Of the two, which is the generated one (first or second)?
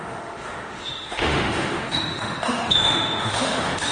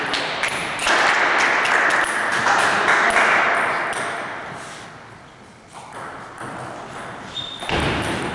first